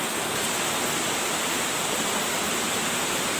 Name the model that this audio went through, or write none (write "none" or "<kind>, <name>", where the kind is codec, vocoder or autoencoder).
none